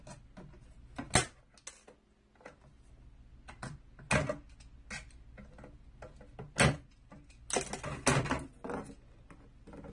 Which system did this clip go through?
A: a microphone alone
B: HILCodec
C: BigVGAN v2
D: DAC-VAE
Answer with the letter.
A